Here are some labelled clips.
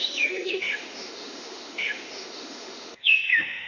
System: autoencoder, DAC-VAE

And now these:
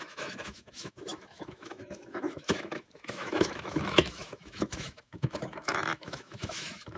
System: autoencoder, DAC-VAE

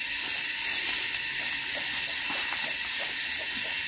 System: none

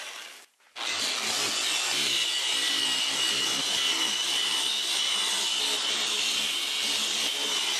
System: none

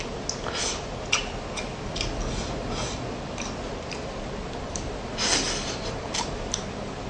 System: none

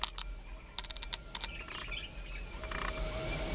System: none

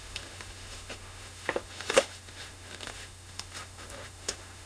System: autoencoder, DAC-VAE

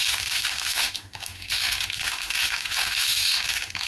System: autoencoder, DAC-VAE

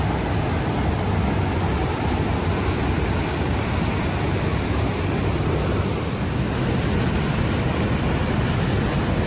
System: none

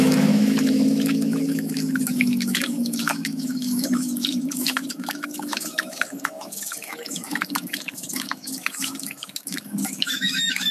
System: autoencoder, DAC-VAE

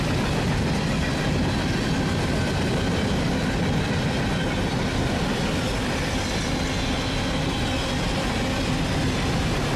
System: none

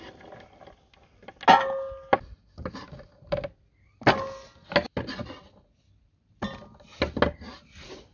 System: none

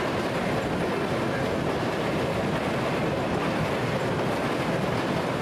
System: none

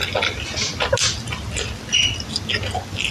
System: none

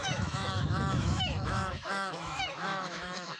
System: autoencoder, DAC-VAE